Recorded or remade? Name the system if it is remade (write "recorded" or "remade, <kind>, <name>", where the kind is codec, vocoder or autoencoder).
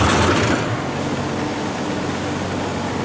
recorded